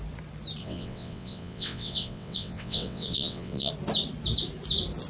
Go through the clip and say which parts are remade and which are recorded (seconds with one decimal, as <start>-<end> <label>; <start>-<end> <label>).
0.0-0.6 recorded; 0.6-3.7 remade; 3.7-5.1 recorded